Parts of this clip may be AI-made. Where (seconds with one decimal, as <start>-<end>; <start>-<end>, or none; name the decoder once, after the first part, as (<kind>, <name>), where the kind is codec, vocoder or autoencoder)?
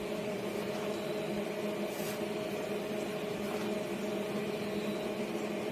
none